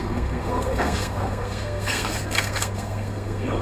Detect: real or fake fake